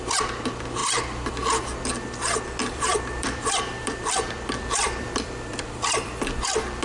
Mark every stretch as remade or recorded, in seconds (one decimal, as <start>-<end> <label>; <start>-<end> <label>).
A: 0.0-2.6 recorded; 2.6-6.2 remade; 6.2-6.8 recorded